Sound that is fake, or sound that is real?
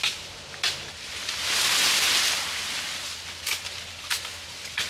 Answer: real